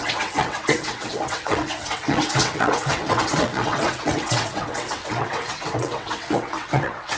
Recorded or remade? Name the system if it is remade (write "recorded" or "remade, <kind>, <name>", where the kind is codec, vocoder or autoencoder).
remade, vocoder, WaveNeXt